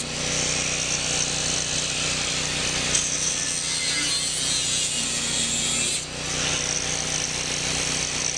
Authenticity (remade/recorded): recorded